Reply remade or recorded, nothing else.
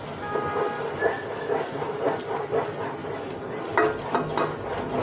recorded